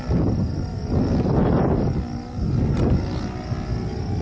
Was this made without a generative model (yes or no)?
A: yes